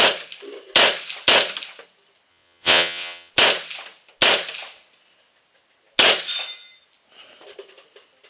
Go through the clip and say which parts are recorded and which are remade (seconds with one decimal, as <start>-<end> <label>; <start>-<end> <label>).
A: 0.0-2.3 recorded; 2.3-3.3 remade; 3.3-8.3 recorded